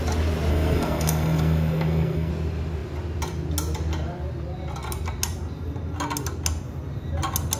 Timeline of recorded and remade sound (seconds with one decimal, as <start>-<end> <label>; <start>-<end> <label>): 0.0-0.5 recorded; 0.5-2.3 remade; 2.3-7.6 recorded